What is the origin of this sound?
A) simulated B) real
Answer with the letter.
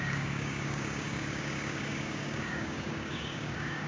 A